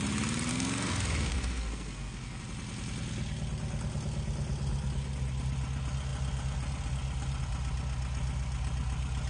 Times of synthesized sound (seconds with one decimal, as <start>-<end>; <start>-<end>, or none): 0.5-2.4